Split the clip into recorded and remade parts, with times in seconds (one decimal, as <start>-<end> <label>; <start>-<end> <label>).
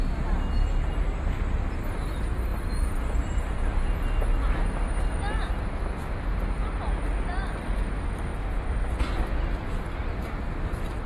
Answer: 0.0-2.5 recorded; 2.5-4.0 remade; 4.0-8.3 recorded; 8.3-9.8 remade; 9.8-11.1 recorded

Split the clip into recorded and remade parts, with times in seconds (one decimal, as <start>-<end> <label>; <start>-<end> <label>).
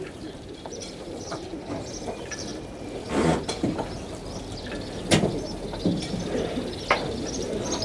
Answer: 0.0-2.5 remade; 2.5-7.2 recorded; 7.2-7.8 remade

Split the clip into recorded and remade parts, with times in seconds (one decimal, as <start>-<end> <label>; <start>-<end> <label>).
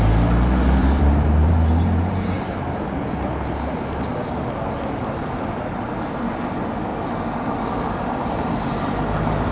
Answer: 0.0-0.8 recorded; 0.8-1.5 remade; 1.5-9.5 recorded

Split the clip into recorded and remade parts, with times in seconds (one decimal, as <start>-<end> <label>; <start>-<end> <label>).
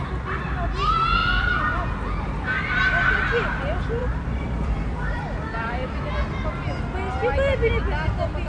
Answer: 0.0-4.0 recorded; 4.0-6.1 remade; 6.1-8.5 recorded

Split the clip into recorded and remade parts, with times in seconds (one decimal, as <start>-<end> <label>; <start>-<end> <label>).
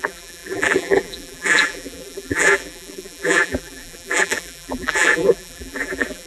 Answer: 0.0-6.3 remade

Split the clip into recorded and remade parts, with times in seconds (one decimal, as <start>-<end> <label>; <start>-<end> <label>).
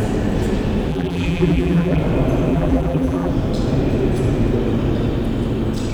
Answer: 0.0-0.9 recorded; 0.9-2.0 remade; 2.0-2.5 recorded; 2.5-3.3 remade; 3.3-5.9 recorded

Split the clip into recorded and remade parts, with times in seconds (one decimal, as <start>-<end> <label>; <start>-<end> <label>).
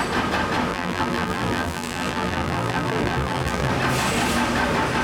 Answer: 0.0-0.7 recorded; 0.7-3.7 remade; 3.7-5.0 recorded